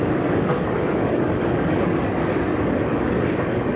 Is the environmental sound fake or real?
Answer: fake